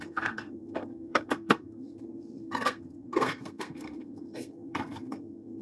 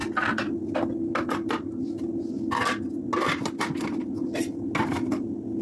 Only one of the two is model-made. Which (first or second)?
first